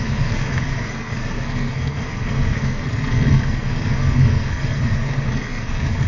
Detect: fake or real fake